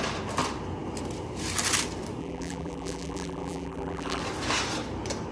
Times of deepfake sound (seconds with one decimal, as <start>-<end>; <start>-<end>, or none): 2.2-4.2